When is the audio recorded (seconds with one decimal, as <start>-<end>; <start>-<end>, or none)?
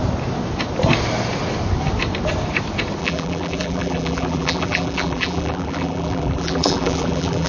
0.0-3.0